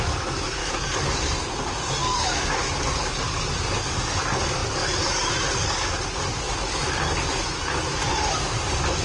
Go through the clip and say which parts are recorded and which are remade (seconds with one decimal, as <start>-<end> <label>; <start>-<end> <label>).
0.0-0.6 recorded; 0.6-1.1 remade; 1.1-2.0 recorded; 2.0-2.6 remade; 2.6-9.0 recorded

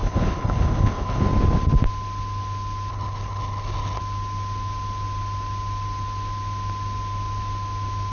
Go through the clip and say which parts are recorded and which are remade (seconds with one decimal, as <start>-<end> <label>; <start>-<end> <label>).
0.0-1.2 remade; 1.2-2.9 recorded; 2.9-4.0 remade; 4.0-8.1 recorded

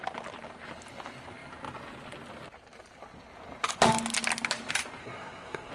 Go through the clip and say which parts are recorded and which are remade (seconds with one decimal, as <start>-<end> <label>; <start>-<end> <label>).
0.0-5.0 recorded; 5.0-5.7 remade

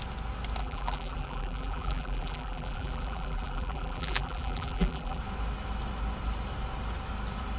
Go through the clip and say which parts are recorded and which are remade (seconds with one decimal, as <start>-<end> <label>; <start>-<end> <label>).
0.0-0.6 recorded; 0.6-5.2 remade; 5.2-7.6 recorded

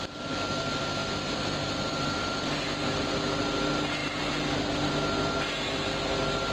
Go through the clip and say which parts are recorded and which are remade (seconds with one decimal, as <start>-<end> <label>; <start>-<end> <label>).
0.0-1.0 recorded; 1.0-3.1 remade; 3.1-6.5 recorded

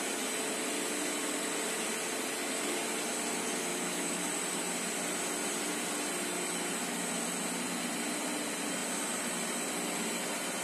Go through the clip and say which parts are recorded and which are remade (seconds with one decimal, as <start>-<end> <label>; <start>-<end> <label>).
0.0-3.7 recorded; 3.7-4.2 remade; 4.2-10.6 recorded